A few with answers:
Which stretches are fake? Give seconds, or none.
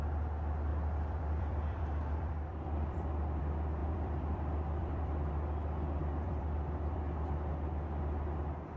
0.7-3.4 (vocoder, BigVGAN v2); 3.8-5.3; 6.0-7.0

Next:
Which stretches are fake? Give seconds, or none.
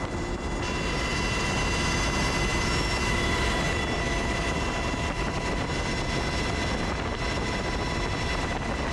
none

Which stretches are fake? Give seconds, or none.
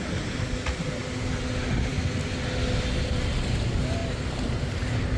none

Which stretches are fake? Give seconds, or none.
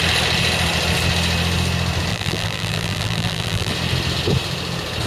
2.1-3.7 (vocoder, BigVGAN v2)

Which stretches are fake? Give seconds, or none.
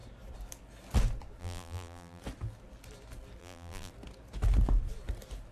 1.4-2.2 (vocoder, BigVGAN v2); 3.4-3.9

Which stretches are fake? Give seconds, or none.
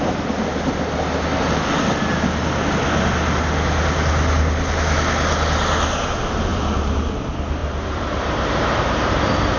6.5-7.0 (vocoder, BigVGAN v2); 7.6-9.2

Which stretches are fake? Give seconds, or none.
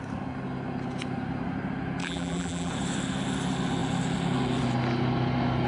2.0-2.7 (vocoder, BigVGAN v2)